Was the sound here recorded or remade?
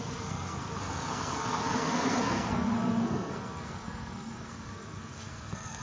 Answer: remade